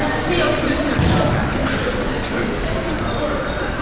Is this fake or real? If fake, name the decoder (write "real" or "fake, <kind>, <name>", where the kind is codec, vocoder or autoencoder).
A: real